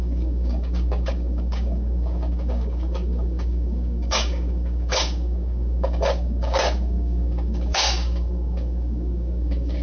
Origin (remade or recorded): remade